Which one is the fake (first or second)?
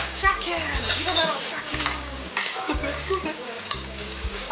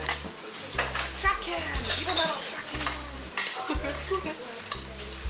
first